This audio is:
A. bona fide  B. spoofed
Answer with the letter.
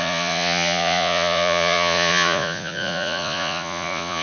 B